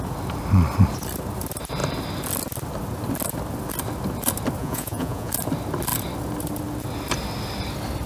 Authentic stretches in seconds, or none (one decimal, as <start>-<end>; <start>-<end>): 0.0-4.6; 5.3-8.1